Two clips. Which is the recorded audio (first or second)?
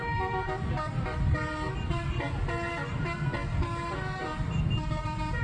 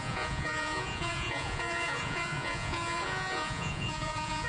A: first